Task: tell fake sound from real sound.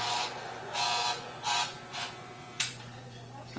fake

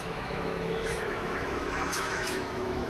fake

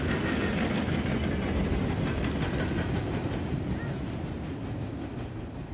real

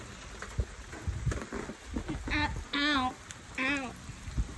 real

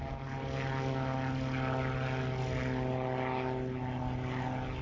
real